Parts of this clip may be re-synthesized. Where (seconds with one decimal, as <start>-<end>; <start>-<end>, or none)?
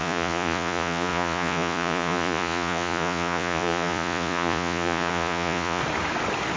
0.0-5.8